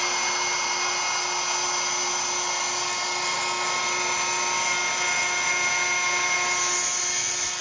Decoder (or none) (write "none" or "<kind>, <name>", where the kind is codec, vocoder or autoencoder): none